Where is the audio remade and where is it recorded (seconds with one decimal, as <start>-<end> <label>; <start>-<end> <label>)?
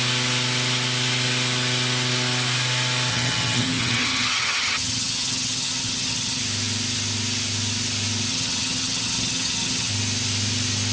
0.0-3.1 recorded; 3.1-6.4 remade; 6.4-8.3 recorded; 8.3-9.9 remade; 9.9-10.9 recorded